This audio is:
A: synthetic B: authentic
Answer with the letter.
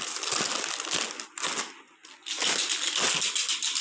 B